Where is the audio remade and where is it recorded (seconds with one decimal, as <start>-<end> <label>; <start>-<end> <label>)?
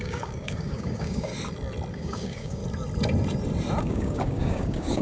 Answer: 0.0-1.3 remade; 1.3-1.9 recorded; 1.9-2.6 remade; 2.6-3.8 recorded; 3.8-5.0 remade